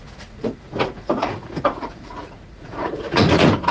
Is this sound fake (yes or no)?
yes